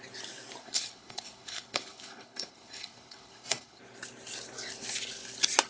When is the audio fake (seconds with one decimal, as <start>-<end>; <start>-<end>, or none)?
0.6-3.8